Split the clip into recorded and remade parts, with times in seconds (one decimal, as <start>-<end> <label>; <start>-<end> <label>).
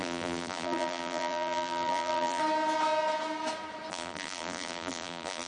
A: 0.0-2.4 remade; 2.4-3.9 recorded; 3.9-5.5 remade